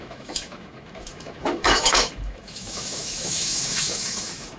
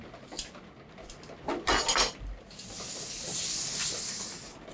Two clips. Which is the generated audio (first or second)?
first